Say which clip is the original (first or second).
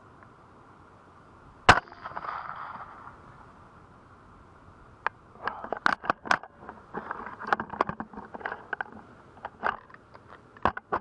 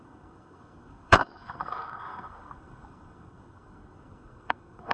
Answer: first